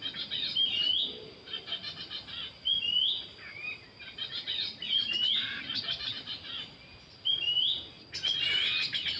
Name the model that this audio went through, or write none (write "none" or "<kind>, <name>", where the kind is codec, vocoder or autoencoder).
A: none